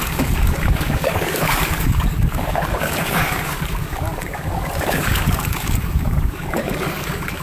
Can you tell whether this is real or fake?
fake